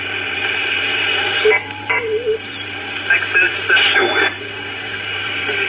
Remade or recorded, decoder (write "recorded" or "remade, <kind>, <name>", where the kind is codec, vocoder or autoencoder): remade, vocoder, BigVGAN v2